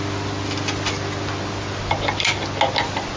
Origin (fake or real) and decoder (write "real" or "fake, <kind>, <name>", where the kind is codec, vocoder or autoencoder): real